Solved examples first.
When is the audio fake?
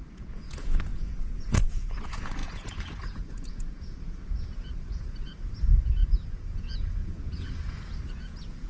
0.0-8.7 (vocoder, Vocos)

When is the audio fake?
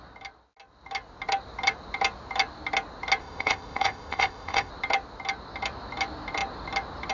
3.2-4.7 (codec, ZipCodec)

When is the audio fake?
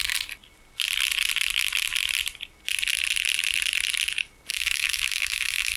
4.5-5.8 (autoencoder, DAC-VAE)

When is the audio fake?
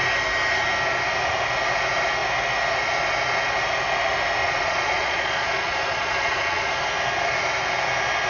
4.4-6.7 (vocoder, Vocos)